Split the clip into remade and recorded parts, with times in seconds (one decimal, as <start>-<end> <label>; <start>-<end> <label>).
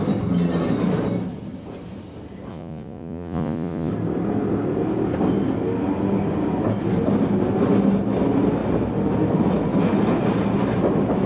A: 0.0-2.5 recorded; 2.5-3.9 remade; 3.9-11.3 recorded